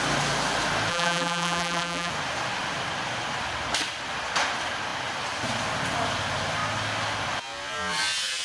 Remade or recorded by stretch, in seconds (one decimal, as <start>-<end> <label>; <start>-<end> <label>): 0.0-0.9 recorded; 0.9-2.1 remade; 2.1-8.4 recorded